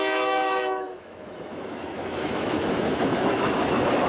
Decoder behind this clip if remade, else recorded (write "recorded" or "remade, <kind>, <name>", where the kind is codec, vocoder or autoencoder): remade, autoencoder, DAC-VAE